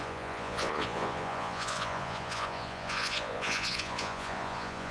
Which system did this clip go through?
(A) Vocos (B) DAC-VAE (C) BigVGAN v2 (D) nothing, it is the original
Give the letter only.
A